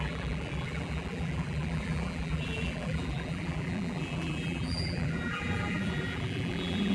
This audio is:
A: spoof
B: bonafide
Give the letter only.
A